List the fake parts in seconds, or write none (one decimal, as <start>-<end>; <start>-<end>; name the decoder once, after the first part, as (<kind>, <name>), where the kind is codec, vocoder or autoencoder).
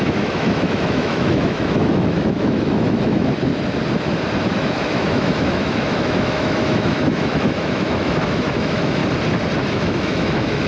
0.0-3.5 (autoencoder, DAC-VAE); 4.4-9.0; 9.6-10.7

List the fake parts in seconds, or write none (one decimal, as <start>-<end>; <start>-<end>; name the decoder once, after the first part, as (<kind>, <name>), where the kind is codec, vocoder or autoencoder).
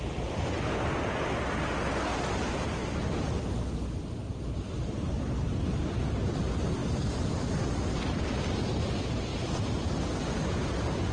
2.8-3.3 (vocoder, BigVGAN v2); 6.8-7.5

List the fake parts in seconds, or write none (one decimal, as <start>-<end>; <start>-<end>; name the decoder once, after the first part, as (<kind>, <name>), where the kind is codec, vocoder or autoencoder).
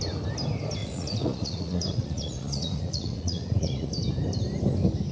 0.8-3.9 (vocoder, Vocos)